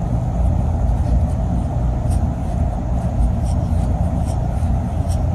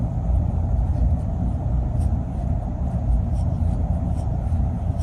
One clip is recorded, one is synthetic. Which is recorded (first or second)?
first